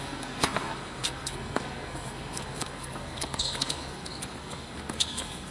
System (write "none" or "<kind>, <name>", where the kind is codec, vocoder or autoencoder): codec, SNAC